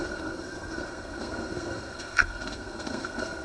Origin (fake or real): fake